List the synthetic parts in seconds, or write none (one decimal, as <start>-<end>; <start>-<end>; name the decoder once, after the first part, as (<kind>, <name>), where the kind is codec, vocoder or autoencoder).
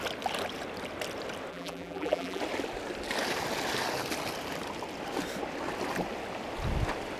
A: 1.5-2.4 (vocoder, BigVGAN v2)